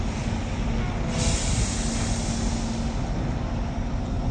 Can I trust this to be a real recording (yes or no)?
yes